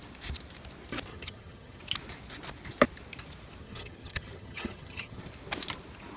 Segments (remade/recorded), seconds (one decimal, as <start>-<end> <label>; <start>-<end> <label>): 0.0-1.1 recorded; 1.1-1.8 remade; 1.8-3.6 recorded; 3.6-5.2 remade; 5.2-6.2 recorded